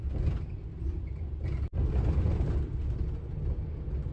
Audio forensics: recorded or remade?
recorded